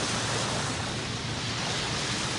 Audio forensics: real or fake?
real